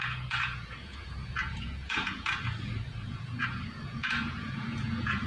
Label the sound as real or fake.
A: fake